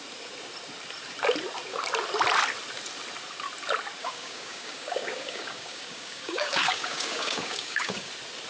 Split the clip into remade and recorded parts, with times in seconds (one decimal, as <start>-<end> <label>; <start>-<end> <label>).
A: 0.0-4.0 recorded; 4.0-8.1 remade; 8.1-8.5 recorded